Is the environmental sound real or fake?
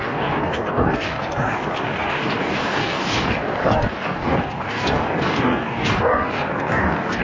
fake